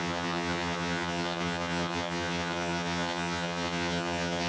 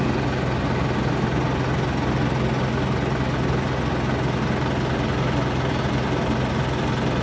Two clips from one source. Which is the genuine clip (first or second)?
second